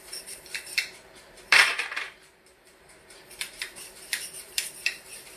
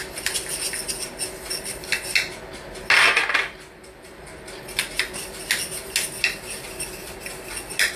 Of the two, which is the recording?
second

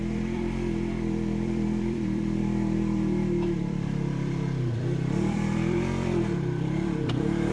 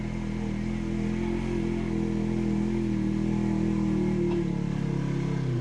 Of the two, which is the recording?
second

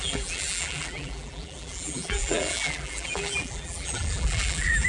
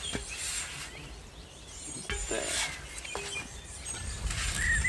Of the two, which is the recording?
second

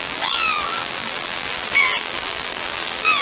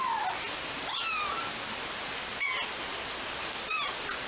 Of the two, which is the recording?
second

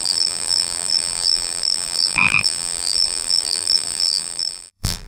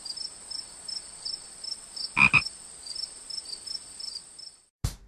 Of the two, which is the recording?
second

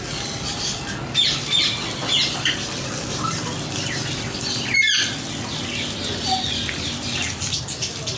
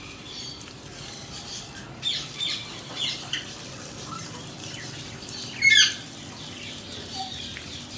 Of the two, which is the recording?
first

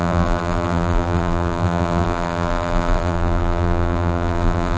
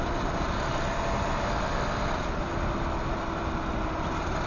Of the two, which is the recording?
second